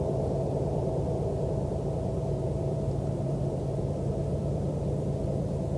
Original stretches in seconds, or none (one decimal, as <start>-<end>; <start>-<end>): 0.0-1.7; 5.2-5.8